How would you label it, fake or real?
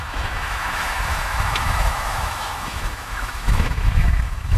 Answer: fake